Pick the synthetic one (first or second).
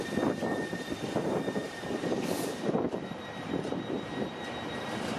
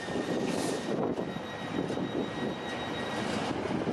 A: first